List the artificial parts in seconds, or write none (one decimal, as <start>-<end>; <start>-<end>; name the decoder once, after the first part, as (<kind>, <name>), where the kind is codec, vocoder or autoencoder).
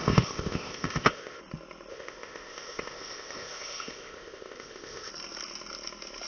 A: 0.0-1.4 (codec, ZipCodec); 1.9-5.1